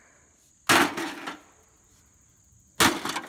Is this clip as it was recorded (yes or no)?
yes